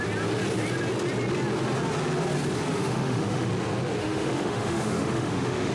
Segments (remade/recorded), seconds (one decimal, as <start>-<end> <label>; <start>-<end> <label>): 0.0-2.8 recorded; 2.8-3.5 remade; 3.5-4.0 recorded; 4.0-5.7 remade

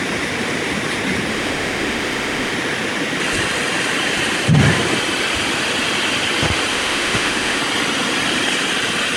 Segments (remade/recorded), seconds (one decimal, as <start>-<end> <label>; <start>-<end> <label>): 0.0-1.3 recorded; 1.3-2.5 remade; 2.5-6.7 recorded; 6.7-7.6 remade; 7.6-9.2 recorded

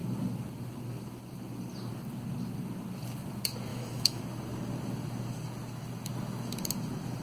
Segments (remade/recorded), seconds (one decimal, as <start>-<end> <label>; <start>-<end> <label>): 0.0-3.7 recorded; 3.7-4.2 remade; 4.2-7.2 recorded

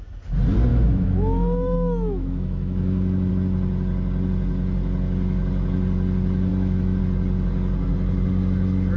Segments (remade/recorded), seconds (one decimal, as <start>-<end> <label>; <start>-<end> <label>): 0.0-0.7 recorded; 0.7-3.3 remade; 3.3-6.5 recorded; 6.5-7.0 remade; 7.0-9.0 recorded

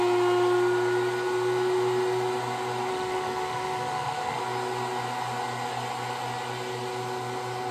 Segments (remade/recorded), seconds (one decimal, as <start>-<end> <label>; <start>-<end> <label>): 0.0-2.9 recorded; 2.9-4.4 remade; 4.4-7.7 recorded

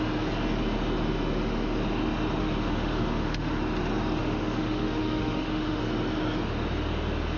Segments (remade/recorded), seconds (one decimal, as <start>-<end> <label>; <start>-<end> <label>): 0.0-2.4 recorded; 2.4-3.6 remade; 3.6-4.2 recorded; 4.2-5.8 remade; 5.8-7.4 recorded